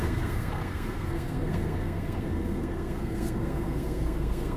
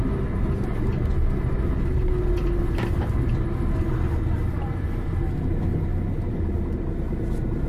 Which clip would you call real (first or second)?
second